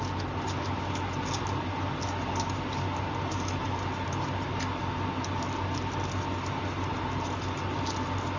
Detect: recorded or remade recorded